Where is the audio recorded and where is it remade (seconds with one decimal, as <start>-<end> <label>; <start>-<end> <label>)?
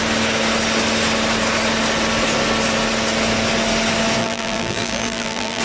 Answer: 0.0-4.2 recorded; 4.2-5.6 remade